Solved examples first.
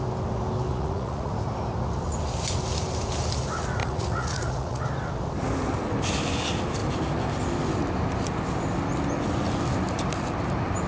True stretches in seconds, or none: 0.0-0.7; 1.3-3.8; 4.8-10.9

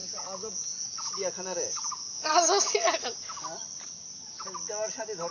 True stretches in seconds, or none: 2.3-5.3

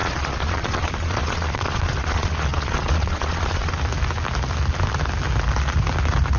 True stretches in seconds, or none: 3.7-6.4